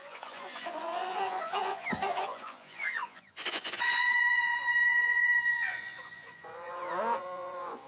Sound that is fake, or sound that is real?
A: fake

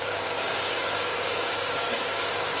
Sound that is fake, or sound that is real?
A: fake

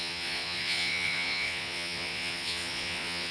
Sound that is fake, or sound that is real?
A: fake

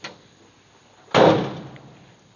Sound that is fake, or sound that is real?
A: real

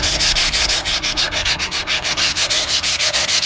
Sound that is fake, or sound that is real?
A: fake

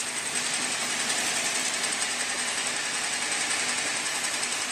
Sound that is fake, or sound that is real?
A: real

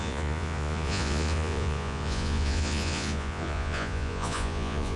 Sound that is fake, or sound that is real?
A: fake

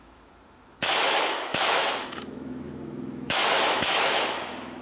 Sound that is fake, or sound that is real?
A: fake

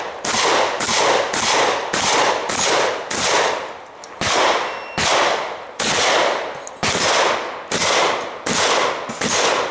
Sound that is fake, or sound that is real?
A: real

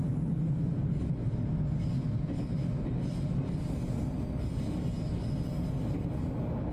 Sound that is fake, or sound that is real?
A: real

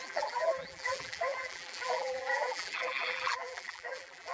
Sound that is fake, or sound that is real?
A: fake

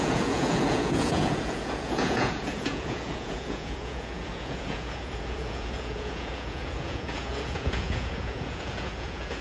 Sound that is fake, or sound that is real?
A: fake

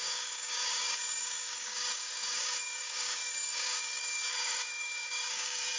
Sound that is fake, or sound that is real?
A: fake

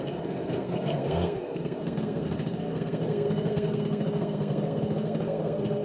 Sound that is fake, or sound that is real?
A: fake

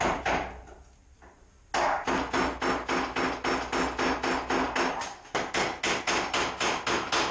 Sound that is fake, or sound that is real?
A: real